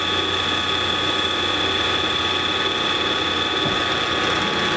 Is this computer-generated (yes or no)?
no